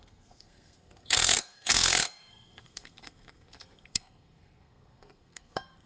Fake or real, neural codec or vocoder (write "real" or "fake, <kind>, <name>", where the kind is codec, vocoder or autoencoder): fake, codec, SNAC